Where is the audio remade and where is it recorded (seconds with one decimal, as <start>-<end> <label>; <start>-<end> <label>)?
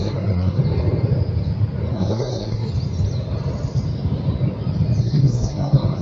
0.0-0.6 remade; 0.6-1.9 recorded; 1.9-2.7 remade; 2.7-5.0 recorded; 5.0-6.0 remade